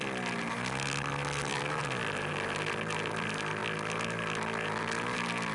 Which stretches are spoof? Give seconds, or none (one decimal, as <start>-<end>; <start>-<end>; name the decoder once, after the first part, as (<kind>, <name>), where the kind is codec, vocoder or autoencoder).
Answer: none